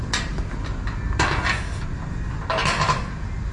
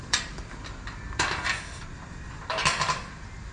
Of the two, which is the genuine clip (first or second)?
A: first